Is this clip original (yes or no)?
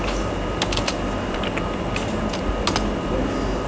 yes